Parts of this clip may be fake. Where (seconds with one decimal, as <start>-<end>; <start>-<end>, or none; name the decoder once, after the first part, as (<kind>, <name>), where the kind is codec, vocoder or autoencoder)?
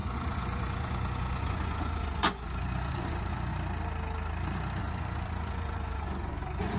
0.0-3.5 (vocoder, Vocos); 4.8-6.8